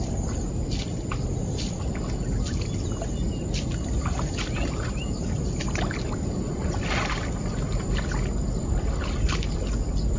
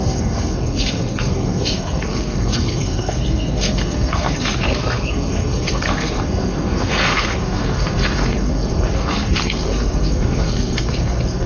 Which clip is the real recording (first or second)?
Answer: first